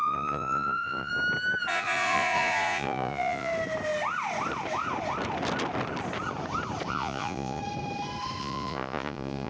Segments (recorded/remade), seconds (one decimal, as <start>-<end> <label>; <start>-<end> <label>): 0.0-1.1 remade; 1.1-1.7 recorded; 1.7-3.5 remade; 3.5-6.9 recorded; 6.9-7.6 remade; 7.6-8.4 recorded; 8.4-9.5 remade